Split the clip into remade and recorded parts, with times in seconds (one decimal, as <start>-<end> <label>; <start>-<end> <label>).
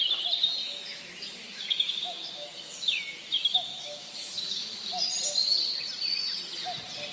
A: 0.0-0.6 recorded; 0.6-4.9 remade; 4.9-7.1 recorded